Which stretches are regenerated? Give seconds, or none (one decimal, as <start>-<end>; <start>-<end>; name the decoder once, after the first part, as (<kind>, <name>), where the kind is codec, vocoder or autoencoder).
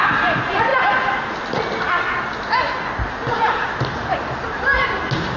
none